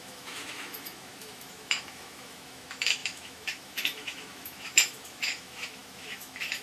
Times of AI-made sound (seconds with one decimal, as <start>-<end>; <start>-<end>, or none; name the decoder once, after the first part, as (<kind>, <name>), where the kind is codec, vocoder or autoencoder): 0.0-6.6 (autoencoder, DAC-VAE)